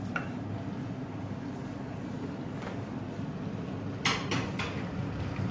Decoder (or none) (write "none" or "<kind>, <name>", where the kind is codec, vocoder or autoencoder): none